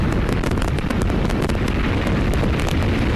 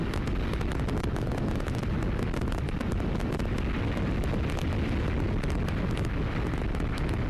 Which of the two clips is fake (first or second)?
first